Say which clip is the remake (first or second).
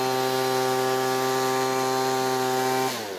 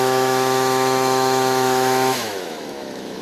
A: second